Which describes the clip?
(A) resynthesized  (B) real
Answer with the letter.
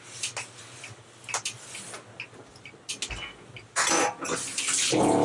B